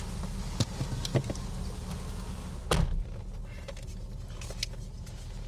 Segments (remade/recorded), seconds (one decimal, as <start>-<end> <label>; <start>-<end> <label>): 0.0-5.5 recorded